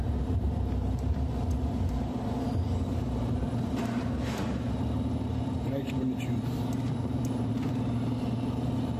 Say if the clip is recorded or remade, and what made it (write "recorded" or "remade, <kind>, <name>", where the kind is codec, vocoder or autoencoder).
remade, vocoder, BigVGAN v2